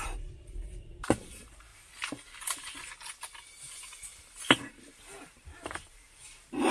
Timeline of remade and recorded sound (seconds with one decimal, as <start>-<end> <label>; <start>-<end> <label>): 0.0-1.7 remade; 1.7-4.1 recorded; 4.1-6.7 remade